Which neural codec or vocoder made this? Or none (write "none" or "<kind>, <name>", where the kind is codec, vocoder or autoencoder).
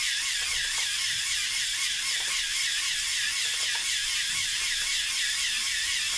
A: none